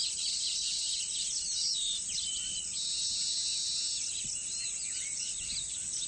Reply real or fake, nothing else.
real